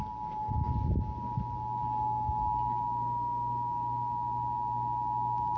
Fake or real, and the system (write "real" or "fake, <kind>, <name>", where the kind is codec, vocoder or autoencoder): real